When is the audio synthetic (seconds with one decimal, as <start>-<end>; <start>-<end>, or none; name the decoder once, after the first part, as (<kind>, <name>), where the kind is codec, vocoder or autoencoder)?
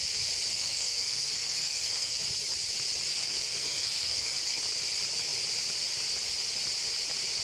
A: 0.5-2.2 (codec, SNAC); 3.1-4.6